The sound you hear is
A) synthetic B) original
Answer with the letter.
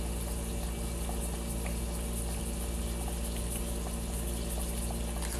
B